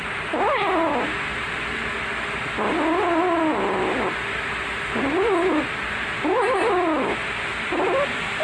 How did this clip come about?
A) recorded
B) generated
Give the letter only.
A